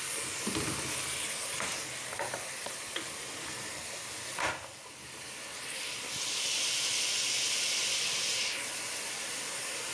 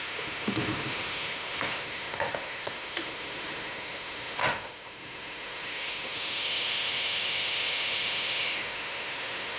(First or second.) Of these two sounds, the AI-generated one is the second